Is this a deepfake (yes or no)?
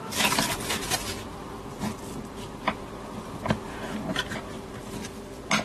no